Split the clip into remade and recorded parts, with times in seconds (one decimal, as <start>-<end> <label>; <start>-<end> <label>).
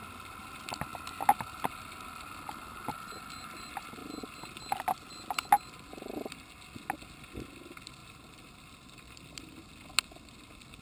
0.0-8.0 recorded; 8.0-9.6 remade; 9.6-10.8 recorded